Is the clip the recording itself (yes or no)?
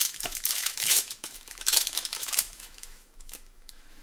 no